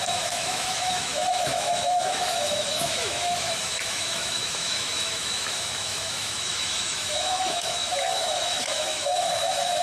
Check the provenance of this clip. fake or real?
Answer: fake